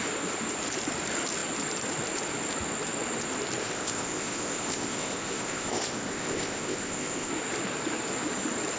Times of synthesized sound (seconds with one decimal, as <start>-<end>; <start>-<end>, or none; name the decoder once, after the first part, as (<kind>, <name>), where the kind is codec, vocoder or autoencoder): 3.6-7.3 (codec, ZipCodec)